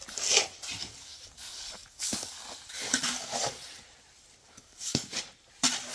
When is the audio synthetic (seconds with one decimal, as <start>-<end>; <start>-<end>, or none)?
0.8-3.6; 4.4-5.2